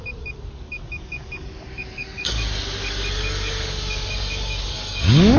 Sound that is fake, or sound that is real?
fake